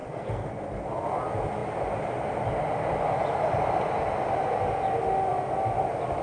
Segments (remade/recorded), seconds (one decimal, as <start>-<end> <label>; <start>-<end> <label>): 0.0-0.5 remade; 0.5-6.2 recorded